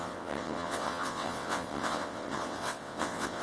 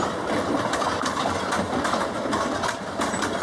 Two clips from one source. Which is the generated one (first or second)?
first